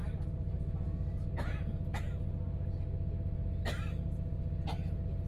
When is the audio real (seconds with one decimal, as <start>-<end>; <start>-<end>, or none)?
0.0-5.3